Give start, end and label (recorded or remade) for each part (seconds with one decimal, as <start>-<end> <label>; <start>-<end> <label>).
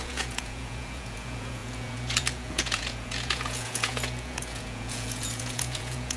0.0-6.2 remade